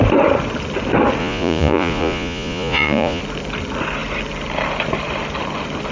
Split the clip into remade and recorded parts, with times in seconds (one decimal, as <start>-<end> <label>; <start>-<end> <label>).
0.0-1.2 recorded; 1.2-3.2 remade; 3.2-5.9 recorded